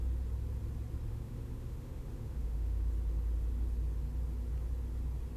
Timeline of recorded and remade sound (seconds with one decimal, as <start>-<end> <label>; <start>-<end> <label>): 0.0-1.1 recorded; 1.1-2.9 remade; 2.9-5.4 recorded